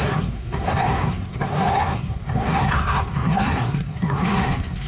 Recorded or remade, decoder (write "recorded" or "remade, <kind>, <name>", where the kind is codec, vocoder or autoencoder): remade, codec, SNAC